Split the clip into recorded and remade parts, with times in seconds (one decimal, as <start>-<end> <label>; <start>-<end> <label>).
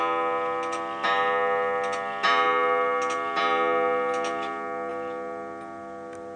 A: 0.0-6.4 recorded